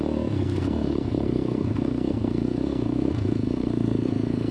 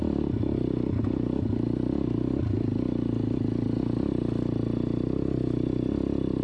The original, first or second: second